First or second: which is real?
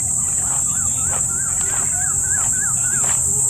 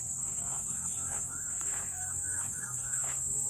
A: first